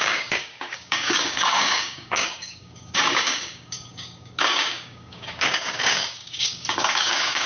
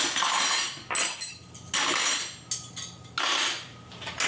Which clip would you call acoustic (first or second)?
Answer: second